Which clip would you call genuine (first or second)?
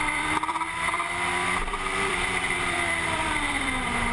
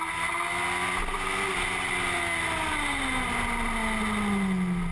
second